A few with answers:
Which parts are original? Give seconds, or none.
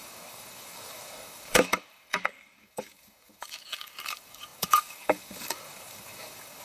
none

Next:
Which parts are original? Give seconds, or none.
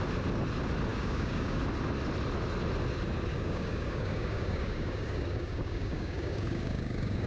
0.0-0.9; 1.6-3.3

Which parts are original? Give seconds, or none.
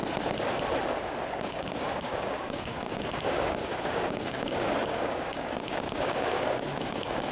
0.0-1.4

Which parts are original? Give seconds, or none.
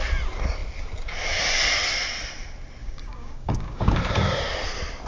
0.0-2.8; 4.0-5.1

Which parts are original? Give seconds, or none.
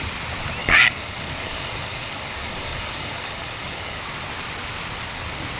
0.0-0.6; 4.0-5.6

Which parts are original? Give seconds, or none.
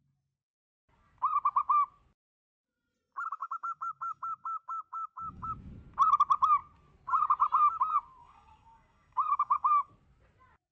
0.0-3.4; 5.5-8.2; 9.9-10.7